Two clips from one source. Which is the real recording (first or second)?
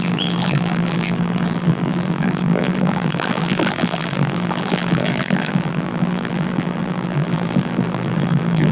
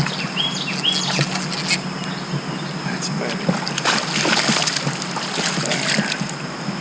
second